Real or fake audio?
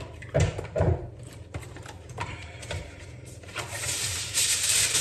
fake